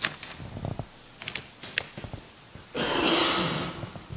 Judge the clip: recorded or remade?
recorded